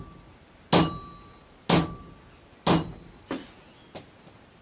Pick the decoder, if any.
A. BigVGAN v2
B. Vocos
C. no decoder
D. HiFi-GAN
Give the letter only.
C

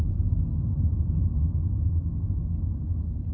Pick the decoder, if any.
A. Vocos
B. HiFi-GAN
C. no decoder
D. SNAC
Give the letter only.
C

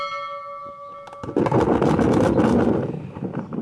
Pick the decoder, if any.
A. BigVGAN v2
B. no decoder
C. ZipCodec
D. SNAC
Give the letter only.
B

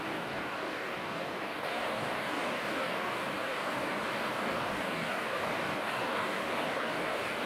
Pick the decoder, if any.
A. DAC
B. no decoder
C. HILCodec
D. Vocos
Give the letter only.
A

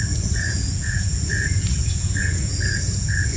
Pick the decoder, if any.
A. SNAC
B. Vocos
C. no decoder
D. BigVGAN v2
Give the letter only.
B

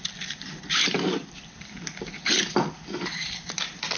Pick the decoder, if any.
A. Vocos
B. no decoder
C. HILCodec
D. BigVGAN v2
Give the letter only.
D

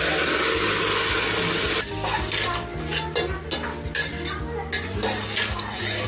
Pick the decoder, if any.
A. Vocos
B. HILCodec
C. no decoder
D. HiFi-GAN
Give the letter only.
C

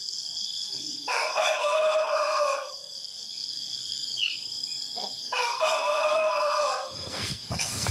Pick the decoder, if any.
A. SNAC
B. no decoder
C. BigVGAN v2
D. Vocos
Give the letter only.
A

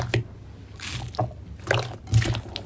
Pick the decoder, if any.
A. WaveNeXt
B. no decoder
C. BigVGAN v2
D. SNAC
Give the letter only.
B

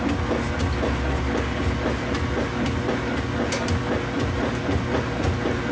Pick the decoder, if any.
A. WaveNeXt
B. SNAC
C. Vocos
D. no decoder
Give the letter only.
D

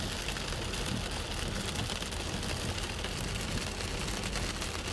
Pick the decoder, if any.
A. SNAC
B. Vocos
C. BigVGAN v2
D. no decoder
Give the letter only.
D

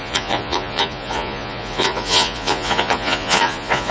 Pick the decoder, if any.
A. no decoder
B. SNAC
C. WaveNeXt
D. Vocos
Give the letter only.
D